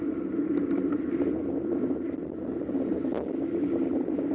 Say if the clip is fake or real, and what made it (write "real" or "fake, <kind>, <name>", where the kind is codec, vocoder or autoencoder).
real